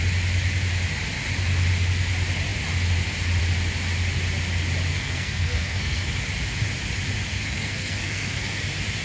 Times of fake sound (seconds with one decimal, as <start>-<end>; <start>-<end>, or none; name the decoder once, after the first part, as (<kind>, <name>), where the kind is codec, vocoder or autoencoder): 4.9-6.1 (codec, SNAC); 7.3-8.6